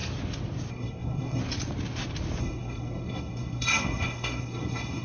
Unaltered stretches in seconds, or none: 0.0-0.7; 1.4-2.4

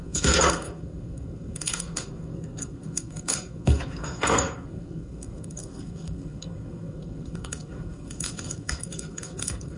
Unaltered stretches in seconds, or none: none

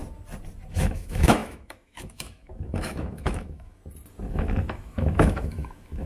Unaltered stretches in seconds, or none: 0.0-0.7; 3.8-4.3